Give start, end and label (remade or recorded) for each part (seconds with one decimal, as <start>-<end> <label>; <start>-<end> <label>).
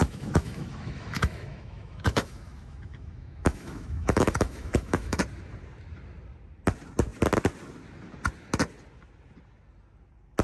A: 0.0-5.2 remade; 5.2-10.4 recorded